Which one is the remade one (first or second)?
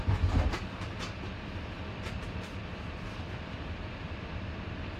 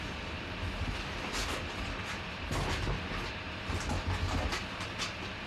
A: first